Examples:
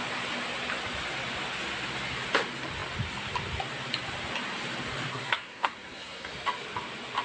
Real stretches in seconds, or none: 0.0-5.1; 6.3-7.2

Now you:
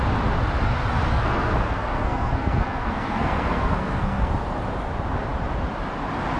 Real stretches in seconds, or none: 0.0-1.1; 4.3-6.4

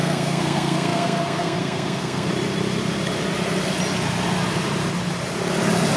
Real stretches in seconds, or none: 2.3-6.0

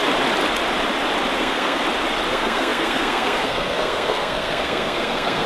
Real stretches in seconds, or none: 0.0-1.4; 1.8-2.3

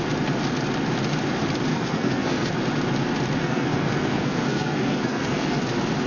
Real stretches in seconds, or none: 0.0-1.7; 2.5-3.4; 5.6-6.1

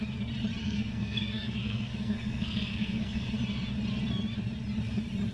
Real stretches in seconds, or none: 0.0-0.6; 3.3-5.3